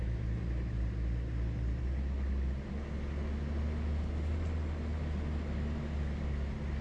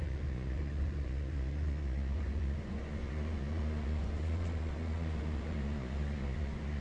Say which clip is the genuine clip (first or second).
first